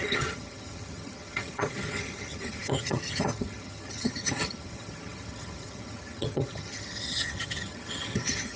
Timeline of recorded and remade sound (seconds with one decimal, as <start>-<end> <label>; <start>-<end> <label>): 0.0-8.6 remade